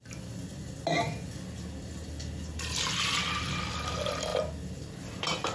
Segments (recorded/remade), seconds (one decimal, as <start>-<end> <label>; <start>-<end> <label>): 0.0-5.5 recorded